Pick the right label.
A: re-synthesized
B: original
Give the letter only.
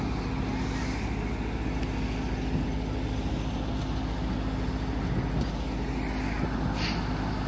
B